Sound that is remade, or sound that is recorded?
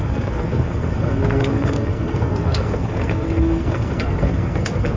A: remade